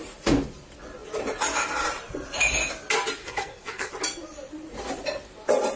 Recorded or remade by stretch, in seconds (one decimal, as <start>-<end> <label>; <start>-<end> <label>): 0.0-3.2 recorded; 3.2-3.9 remade; 3.9-5.8 recorded